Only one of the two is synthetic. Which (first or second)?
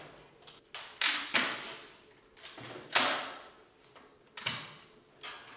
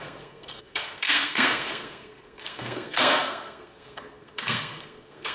second